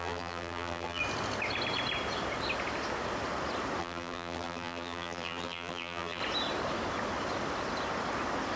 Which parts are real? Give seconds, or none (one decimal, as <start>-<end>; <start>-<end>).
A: 1.0-3.8; 6.2-8.6